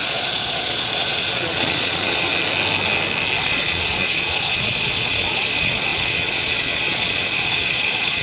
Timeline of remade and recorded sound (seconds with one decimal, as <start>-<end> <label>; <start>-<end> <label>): 0.0-2.3 remade; 2.3-3.4 recorded; 3.4-8.2 remade